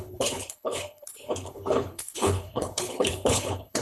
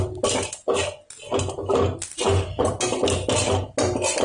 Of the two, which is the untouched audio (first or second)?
second